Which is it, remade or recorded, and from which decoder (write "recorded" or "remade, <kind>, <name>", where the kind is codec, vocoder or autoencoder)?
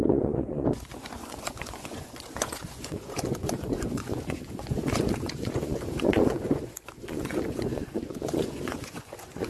remade, vocoder, Vocos